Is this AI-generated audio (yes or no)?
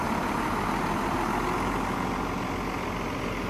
no